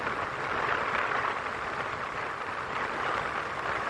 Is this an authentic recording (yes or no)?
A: yes